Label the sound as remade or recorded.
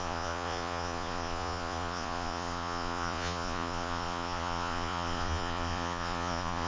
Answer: remade